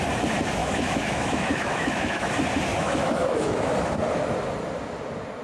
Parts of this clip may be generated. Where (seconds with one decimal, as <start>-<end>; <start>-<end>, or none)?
0.6-2.3; 2.7-3.7